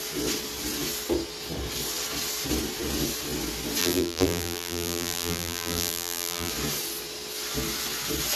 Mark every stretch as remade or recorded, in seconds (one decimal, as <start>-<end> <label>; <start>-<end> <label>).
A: 0.0-3.8 recorded; 3.8-6.5 remade; 6.5-8.4 recorded